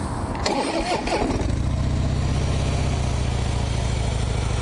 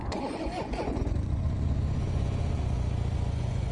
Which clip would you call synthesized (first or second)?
second